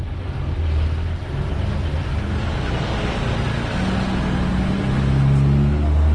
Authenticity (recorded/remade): recorded